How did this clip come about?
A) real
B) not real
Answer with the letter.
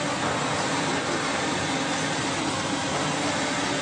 B